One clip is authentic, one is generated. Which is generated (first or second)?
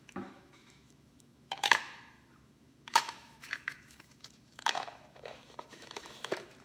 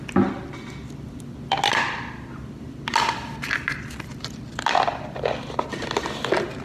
first